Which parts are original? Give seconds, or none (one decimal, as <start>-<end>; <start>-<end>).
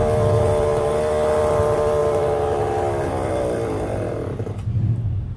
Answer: 0.0-5.4